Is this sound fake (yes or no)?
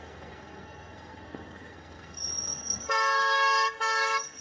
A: yes